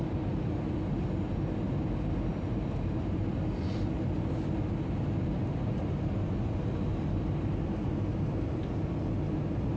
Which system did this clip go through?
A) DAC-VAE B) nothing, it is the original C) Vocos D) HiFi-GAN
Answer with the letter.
B